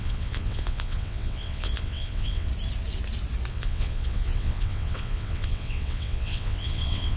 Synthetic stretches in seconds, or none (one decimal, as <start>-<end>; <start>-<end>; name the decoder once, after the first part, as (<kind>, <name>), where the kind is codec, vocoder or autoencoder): 0.0-2.5 (vocoder, WaveNeXt); 3.5-7.2